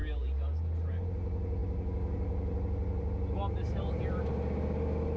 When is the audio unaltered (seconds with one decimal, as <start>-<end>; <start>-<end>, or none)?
0.0-5.2